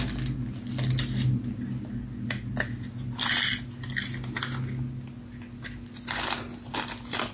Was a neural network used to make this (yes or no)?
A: no